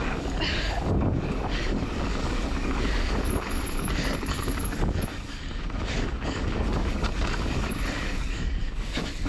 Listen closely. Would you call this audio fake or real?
fake